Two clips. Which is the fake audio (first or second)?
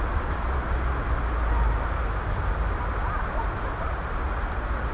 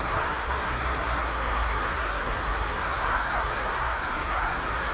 second